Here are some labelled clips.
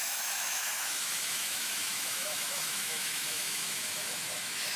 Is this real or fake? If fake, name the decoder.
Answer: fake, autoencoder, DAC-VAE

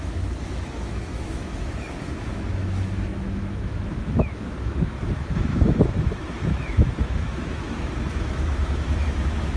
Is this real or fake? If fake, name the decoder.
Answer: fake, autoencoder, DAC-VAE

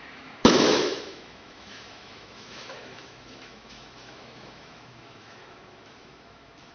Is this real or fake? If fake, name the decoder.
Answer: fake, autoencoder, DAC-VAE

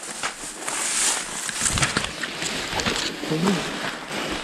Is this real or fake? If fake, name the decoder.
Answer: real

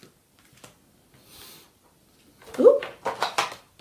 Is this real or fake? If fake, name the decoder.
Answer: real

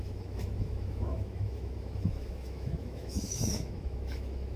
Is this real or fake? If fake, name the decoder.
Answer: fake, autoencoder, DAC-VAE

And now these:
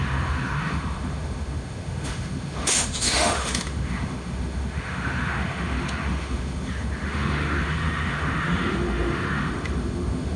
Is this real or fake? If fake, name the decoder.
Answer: fake, autoencoder, DAC-VAE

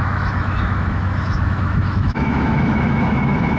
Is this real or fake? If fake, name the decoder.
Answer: fake, autoencoder, DAC-VAE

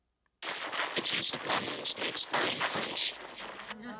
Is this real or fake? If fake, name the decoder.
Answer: real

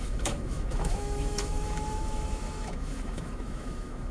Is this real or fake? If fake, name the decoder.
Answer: fake, autoencoder, DAC-VAE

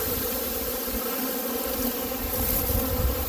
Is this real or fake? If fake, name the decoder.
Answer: real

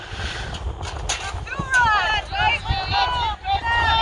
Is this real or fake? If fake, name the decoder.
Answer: real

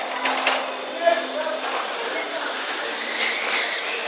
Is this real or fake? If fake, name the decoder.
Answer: real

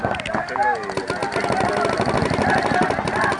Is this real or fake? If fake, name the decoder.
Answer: real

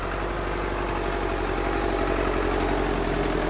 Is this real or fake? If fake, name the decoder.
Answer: real